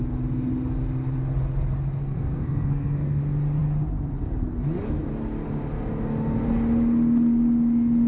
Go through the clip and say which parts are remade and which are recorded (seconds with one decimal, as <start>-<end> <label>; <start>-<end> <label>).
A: 0.0-2.0 recorded; 2.0-3.2 remade; 3.2-8.1 recorded